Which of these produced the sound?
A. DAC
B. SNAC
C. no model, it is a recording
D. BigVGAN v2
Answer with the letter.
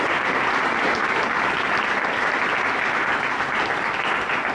C